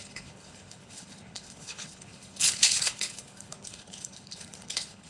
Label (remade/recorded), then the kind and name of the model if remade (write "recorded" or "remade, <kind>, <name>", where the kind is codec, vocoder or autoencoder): remade, codec, HILCodec